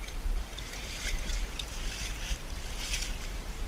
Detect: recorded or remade remade